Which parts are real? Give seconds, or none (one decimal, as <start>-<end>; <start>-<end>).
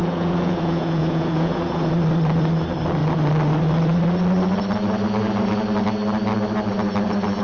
1.9-7.4